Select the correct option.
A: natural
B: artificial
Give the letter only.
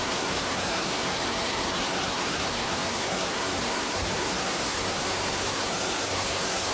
B